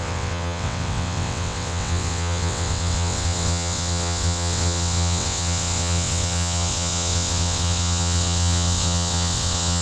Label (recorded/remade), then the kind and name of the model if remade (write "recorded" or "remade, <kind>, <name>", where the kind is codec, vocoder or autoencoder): remade, vocoder, WaveNeXt